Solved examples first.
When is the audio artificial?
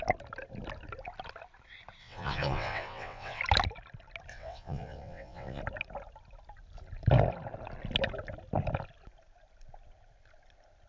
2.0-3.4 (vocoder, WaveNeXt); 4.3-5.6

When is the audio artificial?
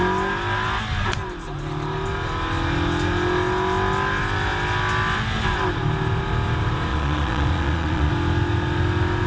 6.9-8.1 (vocoder, Vocos)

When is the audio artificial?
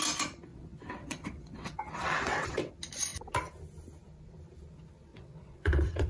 0.5-2.7 (vocoder, WaveNeXt); 5.1-6.1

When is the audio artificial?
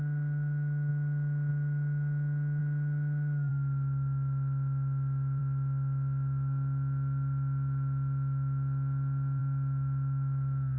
none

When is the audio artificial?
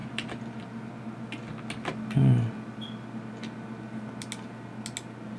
0.0-0.6 (vocoder, BigVGAN v2)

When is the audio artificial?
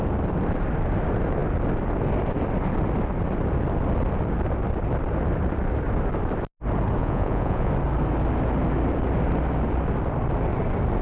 7.0-7.7 (vocoder, Vocos)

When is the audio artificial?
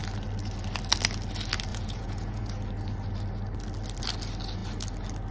1.7-2.5 (vocoder, Vocos)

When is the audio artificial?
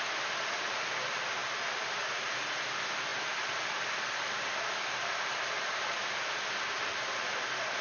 none